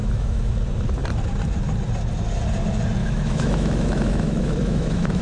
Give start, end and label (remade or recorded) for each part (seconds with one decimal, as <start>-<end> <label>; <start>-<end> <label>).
0.0-0.5 remade; 0.5-3.0 recorded; 3.0-5.2 remade